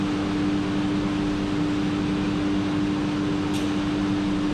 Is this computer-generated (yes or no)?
no